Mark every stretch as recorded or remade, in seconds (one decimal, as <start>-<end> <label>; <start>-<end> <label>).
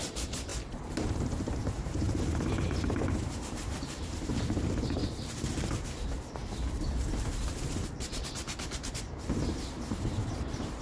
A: 0.0-10.8 remade